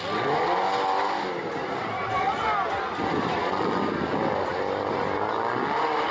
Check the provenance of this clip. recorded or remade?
recorded